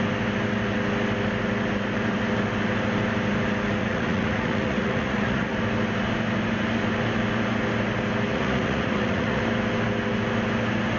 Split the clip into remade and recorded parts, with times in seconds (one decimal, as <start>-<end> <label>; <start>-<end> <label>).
0.0-3.8 recorded; 3.8-5.6 remade; 5.6-8.3 recorded; 8.3-9.4 remade; 9.4-11.0 recorded